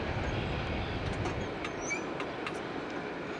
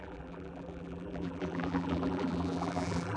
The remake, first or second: second